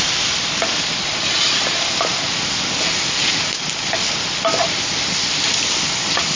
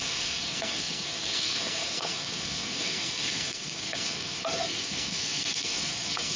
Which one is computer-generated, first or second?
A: second